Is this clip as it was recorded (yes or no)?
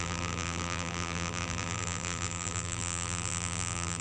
no